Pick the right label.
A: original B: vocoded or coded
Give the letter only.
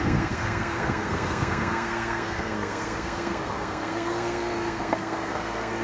B